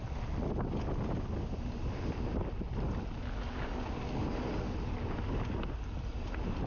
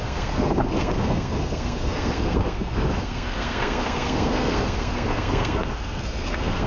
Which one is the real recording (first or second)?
first